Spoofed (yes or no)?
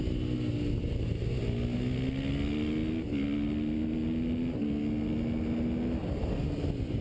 no